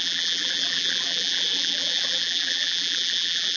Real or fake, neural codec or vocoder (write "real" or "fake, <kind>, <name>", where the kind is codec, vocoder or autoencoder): fake, vocoder, BigVGAN v2